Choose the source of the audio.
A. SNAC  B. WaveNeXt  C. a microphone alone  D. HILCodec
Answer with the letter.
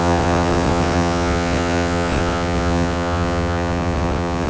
B